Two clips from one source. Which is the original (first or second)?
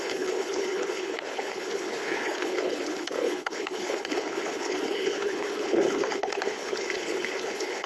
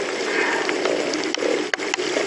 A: second